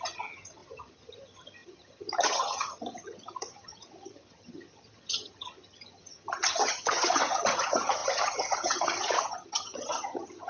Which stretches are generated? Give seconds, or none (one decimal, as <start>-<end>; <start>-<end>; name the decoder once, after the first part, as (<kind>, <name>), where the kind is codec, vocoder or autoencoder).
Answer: 0.0-10.5 (vocoder, HiFi-GAN)

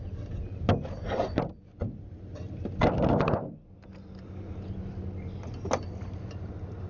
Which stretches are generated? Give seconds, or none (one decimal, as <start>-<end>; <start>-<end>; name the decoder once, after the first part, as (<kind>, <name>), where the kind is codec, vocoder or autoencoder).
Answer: none

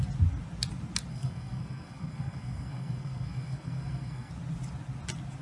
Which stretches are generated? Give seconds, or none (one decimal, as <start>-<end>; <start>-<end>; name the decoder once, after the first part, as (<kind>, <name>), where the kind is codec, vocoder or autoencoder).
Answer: 1.1-4.3 (codec, SNAC)